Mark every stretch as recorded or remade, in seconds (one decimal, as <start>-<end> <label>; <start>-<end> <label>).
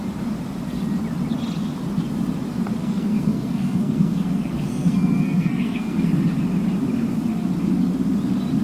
0.0-2.8 recorded; 2.8-6.1 remade; 6.1-8.6 recorded